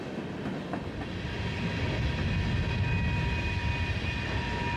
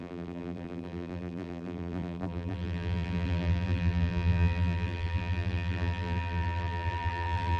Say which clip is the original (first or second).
first